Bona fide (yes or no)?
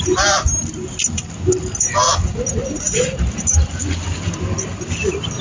yes